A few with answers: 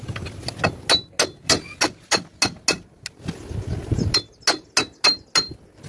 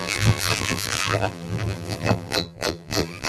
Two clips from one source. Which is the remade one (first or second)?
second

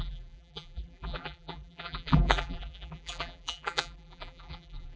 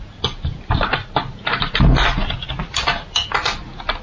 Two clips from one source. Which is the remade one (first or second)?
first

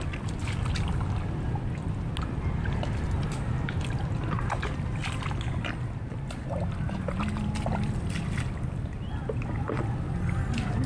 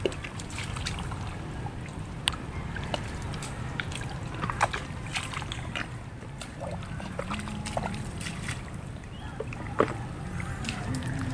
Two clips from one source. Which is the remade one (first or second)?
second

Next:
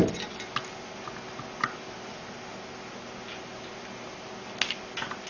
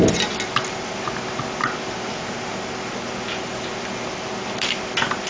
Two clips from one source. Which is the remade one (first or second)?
second